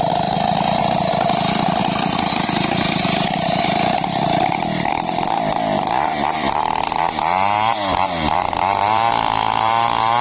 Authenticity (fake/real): real